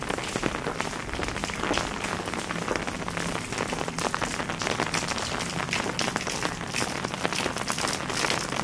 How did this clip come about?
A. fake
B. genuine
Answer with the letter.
B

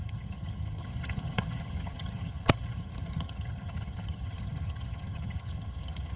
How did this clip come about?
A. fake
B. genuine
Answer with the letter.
A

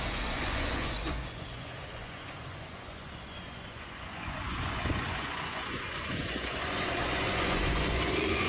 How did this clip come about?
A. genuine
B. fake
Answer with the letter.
B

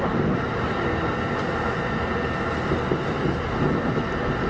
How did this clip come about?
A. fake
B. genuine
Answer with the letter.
B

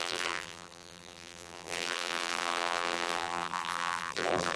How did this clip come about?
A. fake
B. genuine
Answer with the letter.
A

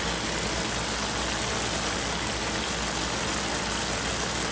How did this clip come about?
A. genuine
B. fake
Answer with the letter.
A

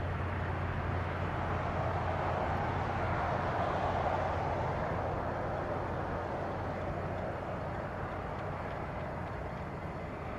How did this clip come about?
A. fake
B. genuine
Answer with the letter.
B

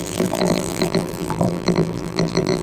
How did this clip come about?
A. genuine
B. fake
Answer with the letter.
B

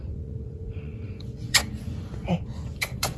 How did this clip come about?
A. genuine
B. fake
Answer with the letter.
B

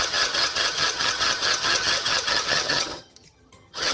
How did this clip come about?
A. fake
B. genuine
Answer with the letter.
A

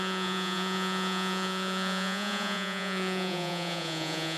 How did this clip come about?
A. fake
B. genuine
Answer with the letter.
A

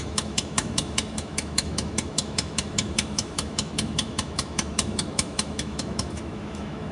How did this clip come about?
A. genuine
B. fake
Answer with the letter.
B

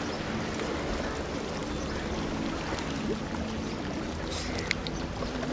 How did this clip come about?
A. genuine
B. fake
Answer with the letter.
A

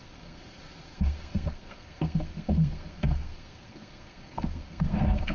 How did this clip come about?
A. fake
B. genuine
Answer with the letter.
A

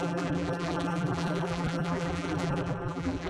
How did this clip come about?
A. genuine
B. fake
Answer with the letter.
B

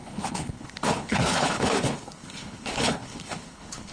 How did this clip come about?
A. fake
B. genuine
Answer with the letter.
A